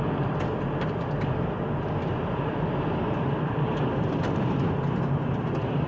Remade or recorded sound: remade